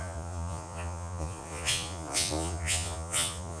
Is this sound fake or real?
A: fake